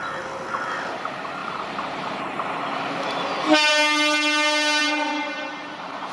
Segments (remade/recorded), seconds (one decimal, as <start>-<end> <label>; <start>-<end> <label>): 0.0-1.4 recorded; 1.4-3.7 remade; 3.7-4.8 recorded; 4.8-6.1 remade